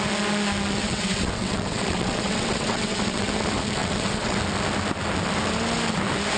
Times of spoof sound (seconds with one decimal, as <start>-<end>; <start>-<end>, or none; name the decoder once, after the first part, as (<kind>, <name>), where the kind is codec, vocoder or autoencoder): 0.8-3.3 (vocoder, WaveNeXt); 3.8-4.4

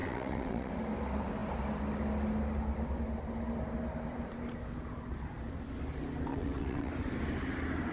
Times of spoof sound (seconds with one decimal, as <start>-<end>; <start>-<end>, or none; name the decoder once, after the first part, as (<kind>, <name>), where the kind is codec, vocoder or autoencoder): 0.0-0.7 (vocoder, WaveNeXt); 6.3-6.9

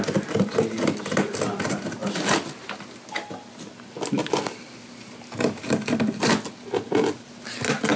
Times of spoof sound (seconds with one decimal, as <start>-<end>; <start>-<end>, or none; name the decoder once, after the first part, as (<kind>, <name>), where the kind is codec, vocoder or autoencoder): none

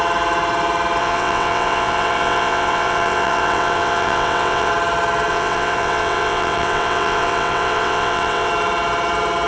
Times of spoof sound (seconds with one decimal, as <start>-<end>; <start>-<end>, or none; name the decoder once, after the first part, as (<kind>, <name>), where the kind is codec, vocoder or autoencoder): 1.0-4.7 (vocoder, WaveNeXt); 5.3-8.5

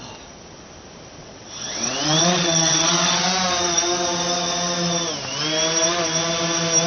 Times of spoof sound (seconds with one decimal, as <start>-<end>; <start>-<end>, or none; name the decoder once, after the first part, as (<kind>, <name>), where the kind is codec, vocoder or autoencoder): 1.2-3.2 (vocoder, WaveNeXt)

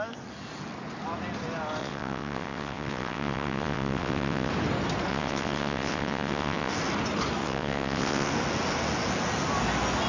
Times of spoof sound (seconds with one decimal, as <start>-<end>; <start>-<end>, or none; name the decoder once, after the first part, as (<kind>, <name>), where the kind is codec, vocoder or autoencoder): 1.8-4.5 (vocoder, WaveNeXt); 5.1-6.7; 7.4-8.3

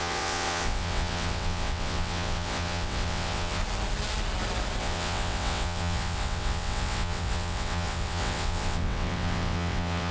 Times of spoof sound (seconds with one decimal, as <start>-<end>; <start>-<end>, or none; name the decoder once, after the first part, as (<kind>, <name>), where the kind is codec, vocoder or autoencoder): 0.0-3.6 (vocoder, WaveNeXt); 4.8-10.1

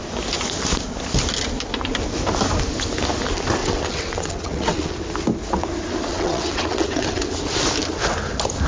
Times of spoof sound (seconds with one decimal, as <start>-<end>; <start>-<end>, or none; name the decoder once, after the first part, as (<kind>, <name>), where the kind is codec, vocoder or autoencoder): 3.6-4.9 (vocoder, WaveNeXt); 6.1-7.2